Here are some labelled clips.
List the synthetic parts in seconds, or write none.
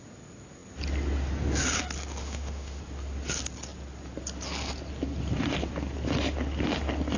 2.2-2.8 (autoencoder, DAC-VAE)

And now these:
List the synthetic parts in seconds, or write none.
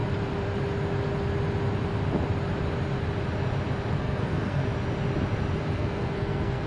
4.0-4.6 (codec, SNAC); 5.6-6.7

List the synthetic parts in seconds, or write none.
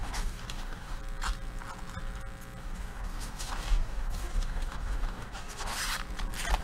0.0-1.0 (codec, DAC); 2.6-5.8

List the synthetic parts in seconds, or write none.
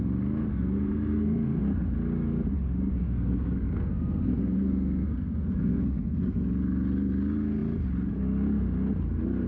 0.4-1.6 (codec, SNAC); 3.0-6.4